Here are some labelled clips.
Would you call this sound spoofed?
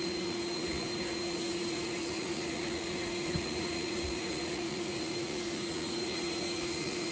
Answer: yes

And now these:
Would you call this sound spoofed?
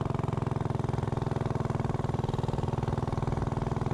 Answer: no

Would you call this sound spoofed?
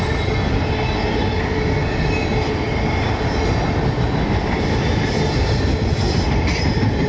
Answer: no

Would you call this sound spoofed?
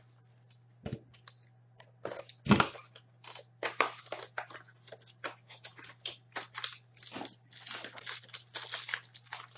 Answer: no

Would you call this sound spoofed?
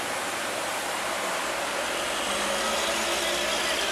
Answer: no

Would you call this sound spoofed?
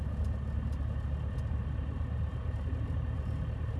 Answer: no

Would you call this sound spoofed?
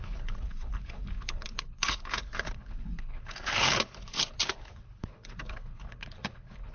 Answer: yes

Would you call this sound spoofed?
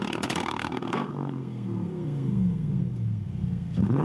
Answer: yes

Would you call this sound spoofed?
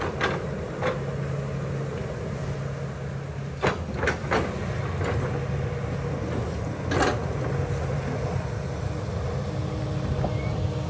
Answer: no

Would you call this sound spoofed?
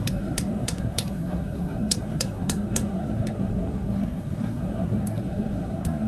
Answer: yes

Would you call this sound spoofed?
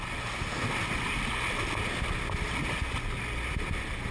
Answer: no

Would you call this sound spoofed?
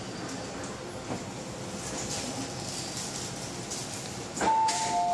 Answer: no